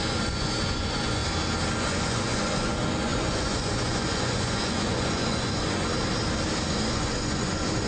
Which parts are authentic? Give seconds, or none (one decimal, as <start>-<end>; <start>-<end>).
1.2-1.8; 5.9-6.7